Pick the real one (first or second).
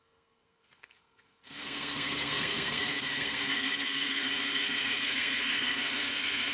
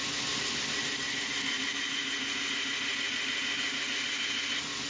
second